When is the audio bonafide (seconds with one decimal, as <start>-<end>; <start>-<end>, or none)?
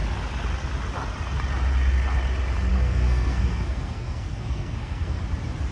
0.0-2.7; 5.2-5.7